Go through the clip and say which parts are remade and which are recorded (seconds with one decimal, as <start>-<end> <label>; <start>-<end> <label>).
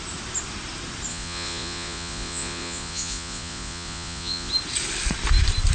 0.0-1.1 recorded; 1.1-4.5 remade; 4.5-5.7 recorded